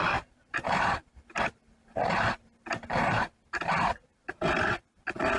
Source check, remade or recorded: recorded